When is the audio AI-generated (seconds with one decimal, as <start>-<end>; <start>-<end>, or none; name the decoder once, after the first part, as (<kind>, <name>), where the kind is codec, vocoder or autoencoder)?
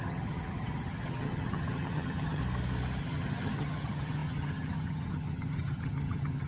0.0-2.4 (vocoder, HiFi-GAN); 3.0-6.5